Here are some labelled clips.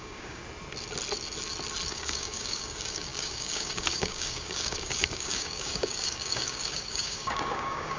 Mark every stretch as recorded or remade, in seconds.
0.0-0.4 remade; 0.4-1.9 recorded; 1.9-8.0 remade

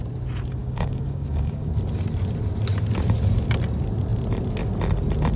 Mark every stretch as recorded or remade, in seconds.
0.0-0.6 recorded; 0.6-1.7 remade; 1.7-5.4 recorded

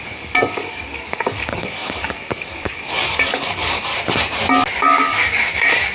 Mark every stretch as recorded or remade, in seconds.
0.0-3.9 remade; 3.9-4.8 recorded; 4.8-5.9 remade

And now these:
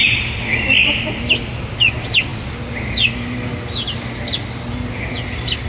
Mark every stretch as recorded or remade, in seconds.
0.0-5.7 recorded

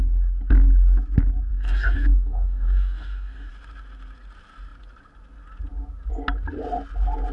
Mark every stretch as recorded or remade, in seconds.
0.0-1.5 recorded; 1.5-3.5 remade; 3.5-7.3 recorded